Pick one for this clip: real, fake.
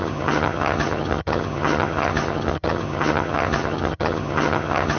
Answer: fake